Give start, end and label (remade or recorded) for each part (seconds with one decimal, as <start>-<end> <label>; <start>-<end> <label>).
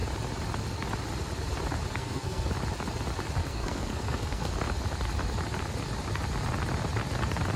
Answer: 0.0-1.9 recorded; 1.9-2.5 remade; 2.5-3.4 recorded; 3.4-4.5 remade; 4.5-7.6 recorded